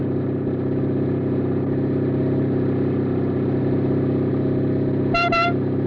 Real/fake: real